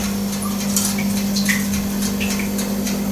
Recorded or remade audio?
recorded